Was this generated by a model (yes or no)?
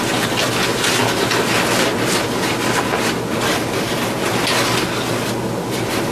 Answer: no